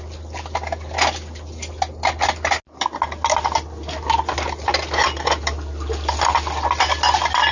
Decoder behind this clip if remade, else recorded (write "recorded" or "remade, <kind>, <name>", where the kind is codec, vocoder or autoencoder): recorded